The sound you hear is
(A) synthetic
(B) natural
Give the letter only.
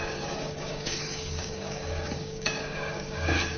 A